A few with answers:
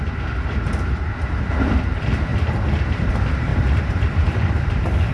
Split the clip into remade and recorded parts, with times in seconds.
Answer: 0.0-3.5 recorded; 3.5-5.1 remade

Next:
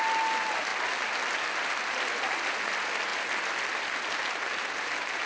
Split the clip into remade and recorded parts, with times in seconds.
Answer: 0.0-5.3 recorded

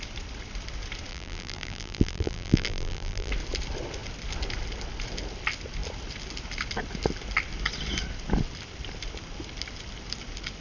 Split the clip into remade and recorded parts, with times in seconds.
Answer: 0.0-1.1 recorded; 1.1-3.3 remade; 3.3-10.6 recorded

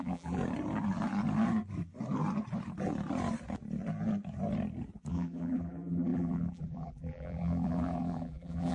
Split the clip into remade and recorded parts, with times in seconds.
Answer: 0.0-0.4 remade; 0.4-5.1 recorded; 5.1-8.7 remade